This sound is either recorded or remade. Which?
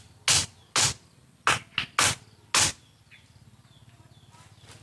recorded